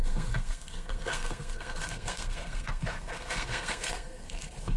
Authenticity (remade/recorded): remade